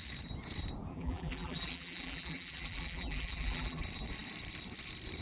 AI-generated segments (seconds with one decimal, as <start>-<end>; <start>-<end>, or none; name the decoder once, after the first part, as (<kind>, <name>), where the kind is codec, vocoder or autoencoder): 0.9-3.8 (vocoder, BigVGAN v2)